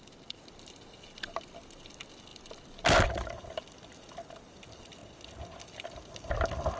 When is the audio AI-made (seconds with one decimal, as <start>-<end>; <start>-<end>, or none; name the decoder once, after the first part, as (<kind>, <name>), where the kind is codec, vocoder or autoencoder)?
none